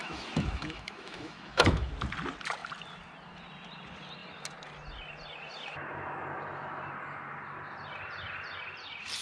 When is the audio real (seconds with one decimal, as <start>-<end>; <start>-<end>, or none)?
1.9-9.2